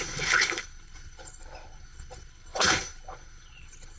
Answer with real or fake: fake